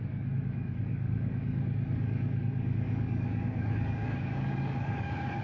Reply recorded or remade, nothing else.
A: remade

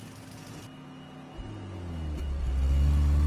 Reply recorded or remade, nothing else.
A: recorded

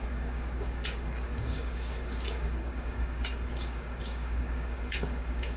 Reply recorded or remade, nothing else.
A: remade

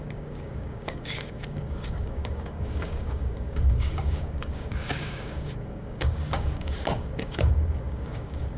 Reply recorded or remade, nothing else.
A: remade